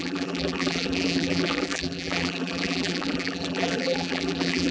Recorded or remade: remade